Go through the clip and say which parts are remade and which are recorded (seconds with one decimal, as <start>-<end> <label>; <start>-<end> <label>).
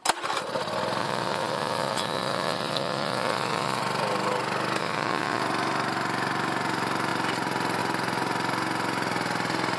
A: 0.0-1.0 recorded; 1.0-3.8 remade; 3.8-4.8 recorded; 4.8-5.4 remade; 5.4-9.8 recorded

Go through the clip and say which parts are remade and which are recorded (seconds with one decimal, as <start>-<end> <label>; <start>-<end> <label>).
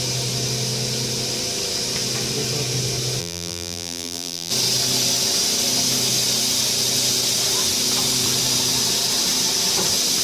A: 0.0-3.2 recorded; 3.2-4.5 remade; 4.5-10.2 recorded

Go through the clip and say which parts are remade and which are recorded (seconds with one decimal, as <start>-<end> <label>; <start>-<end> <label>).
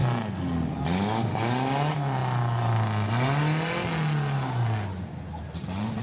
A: 0.0-6.0 recorded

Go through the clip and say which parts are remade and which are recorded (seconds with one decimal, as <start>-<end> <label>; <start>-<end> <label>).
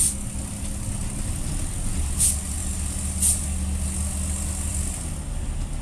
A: 0.0-5.8 recorded